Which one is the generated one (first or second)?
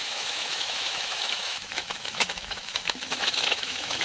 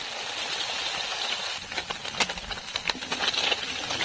first